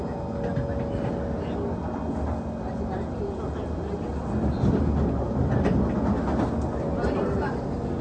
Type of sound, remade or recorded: recorded